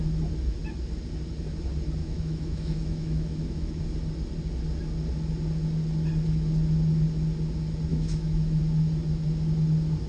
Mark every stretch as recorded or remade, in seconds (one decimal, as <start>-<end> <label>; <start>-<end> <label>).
0.0-2.0 recorded; 2.0-3.8 remade; 3.8-7.9 recorded; 7.9-8.6 remade; 8.6-10.1 recorded